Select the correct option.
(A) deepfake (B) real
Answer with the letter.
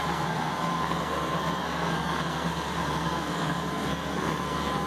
A